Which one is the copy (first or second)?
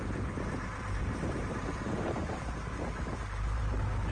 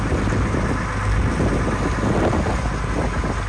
first